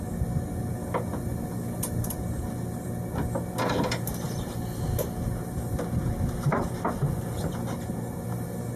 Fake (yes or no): no